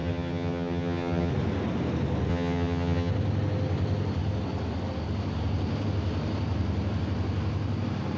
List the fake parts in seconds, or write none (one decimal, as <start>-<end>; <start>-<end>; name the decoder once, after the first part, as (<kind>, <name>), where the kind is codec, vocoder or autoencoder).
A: 0.0-1.3 (vocoder, HiFi-GAN); 2.3-3.1

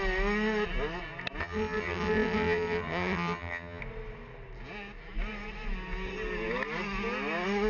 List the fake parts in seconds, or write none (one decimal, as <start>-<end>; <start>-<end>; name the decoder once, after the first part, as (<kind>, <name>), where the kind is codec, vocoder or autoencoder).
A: 1.4-3.8 (vocoder, HiFi-GAN)